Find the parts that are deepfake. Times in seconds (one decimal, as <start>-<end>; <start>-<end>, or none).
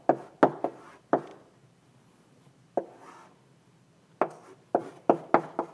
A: none